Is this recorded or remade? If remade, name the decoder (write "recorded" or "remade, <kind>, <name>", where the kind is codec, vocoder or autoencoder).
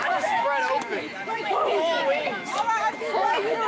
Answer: remade, autoencoder, DAC-VAE